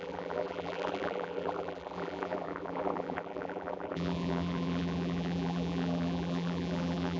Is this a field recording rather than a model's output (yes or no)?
no